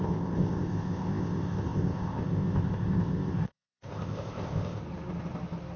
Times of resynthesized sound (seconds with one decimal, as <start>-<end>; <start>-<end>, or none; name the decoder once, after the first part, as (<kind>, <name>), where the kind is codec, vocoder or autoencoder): 0.0-4.8 (codec, ZipCodec)